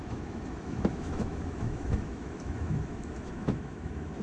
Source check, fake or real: fake